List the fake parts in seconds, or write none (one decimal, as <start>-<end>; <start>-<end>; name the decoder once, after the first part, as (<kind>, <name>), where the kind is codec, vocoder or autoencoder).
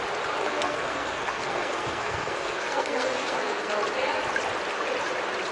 0.4-3.7 (codec, SNAC)